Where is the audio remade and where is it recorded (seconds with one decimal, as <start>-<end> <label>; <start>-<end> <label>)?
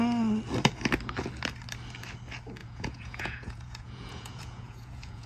0.0-2.6 recorded; 2.6-5.3 remade